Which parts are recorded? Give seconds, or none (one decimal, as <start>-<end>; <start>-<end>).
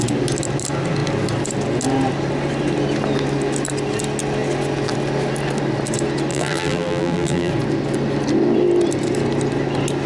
0.0-6.3; 7.5-10.1